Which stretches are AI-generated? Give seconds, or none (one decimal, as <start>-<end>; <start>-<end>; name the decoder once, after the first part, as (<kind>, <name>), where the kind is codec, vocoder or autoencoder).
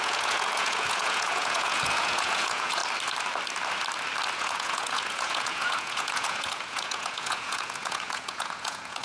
0.0-2.8 (vocoder, Vocos); 4.3-9.0